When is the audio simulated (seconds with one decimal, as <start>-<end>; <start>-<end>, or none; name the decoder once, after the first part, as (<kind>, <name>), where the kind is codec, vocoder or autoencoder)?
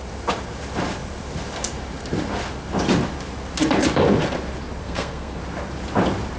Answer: 4.8-5.4 (codec, SNAC)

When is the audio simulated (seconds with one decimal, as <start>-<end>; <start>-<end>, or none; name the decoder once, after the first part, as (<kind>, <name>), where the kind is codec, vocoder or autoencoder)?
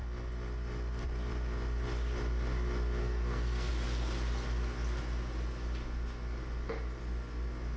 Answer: 3.0-3.7 (codec, SNAC)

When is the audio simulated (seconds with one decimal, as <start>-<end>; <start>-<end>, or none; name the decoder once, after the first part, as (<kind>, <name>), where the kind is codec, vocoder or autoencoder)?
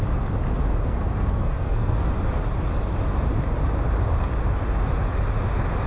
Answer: 0.7-2.1 (codec, SNAC)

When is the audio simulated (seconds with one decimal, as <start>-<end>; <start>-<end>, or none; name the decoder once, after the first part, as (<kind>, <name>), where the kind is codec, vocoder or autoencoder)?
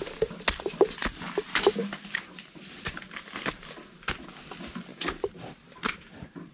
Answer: 1.8-2.9 (vocoder, BigVGAN v2); 4.9-6.5